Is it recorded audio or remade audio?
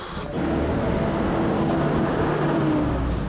recorded